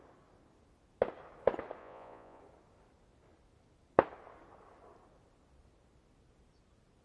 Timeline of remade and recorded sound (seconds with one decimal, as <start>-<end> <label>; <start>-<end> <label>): 0.0-1.8 recorded; 1.8-2.4 remade; 2.4-7.0 recorded